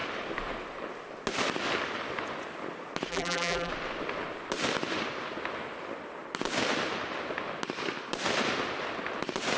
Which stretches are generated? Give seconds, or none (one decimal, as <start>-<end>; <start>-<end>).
3.1-3.7